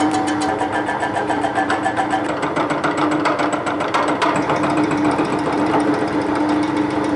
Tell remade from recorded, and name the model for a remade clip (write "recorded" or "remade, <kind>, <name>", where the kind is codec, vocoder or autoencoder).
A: remade, vocoder, BigVGAN v2